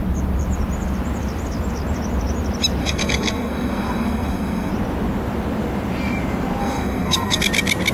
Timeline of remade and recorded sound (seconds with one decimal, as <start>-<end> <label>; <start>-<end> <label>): 0.0-2.8 recorded; 2.8-4.7 remade; 4.7-6.6 recorded; 6.6-7.4 remade; 7.4-7.9 recorded